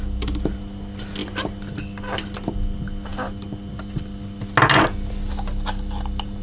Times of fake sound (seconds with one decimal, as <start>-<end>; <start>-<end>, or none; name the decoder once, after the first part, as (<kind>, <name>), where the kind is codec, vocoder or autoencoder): none